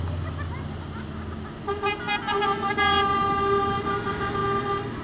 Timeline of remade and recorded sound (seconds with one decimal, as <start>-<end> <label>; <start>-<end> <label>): 0.0-5.0 recorded